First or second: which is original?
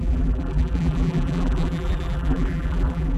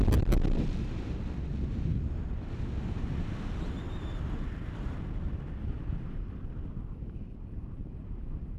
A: second